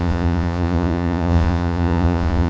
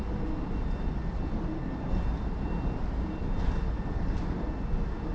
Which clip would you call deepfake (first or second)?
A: first